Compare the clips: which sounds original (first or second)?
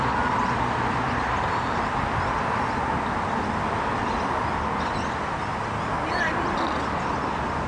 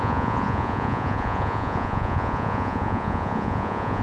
first